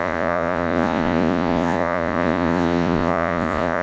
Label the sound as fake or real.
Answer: fake